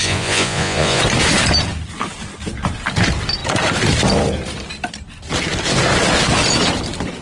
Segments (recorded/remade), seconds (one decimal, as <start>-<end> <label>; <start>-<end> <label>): 0.0-1.0 remade; 1.0-7.2 recorded